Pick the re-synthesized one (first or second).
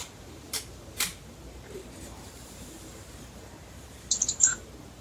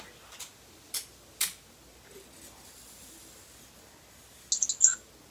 first